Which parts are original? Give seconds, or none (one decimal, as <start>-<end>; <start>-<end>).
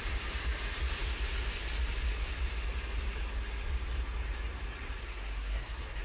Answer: 0.0-5.0